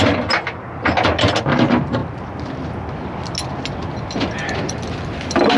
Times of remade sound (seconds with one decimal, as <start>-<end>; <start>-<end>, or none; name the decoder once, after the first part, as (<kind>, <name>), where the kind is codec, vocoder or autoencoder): none